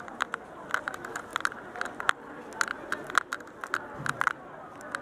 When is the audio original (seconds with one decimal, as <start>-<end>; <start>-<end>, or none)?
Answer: 0.0-5.0